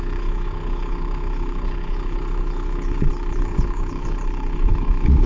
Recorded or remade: remade